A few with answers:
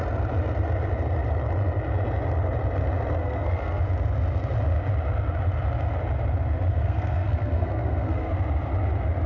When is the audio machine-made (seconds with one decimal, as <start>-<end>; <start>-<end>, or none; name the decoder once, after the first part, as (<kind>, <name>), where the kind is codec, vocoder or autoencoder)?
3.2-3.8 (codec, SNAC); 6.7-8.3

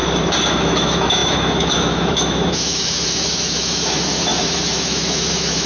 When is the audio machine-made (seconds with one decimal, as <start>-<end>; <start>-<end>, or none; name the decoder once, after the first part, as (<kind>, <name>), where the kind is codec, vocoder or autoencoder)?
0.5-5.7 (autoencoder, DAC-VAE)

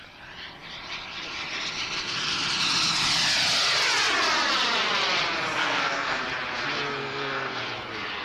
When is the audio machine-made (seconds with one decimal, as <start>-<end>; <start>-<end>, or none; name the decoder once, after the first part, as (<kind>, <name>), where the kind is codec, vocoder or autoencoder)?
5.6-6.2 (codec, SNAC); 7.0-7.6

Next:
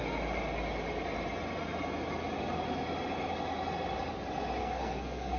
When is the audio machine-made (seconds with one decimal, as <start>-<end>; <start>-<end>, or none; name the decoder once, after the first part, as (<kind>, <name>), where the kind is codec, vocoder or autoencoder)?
4.6-5.4 (codec, SNAC)